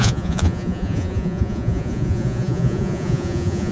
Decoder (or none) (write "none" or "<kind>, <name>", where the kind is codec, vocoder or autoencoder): vocoder, Vocos